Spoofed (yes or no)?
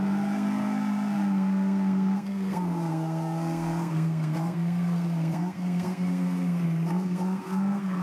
yes